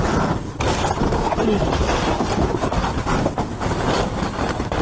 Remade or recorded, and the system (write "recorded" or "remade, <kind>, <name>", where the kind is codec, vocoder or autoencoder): recorded